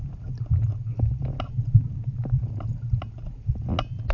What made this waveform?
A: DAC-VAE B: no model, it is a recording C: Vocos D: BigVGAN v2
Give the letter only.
B